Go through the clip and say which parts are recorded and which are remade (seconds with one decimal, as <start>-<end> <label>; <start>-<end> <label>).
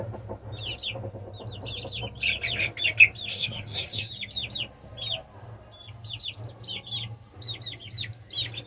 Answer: 0.0-3.3 recorded; 3.3-4.1 remade; 4.1-8.7 recorded